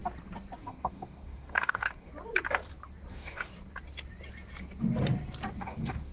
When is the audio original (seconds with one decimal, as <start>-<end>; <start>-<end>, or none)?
0.0-0.6; 2.1-3.1; 3.5-5.6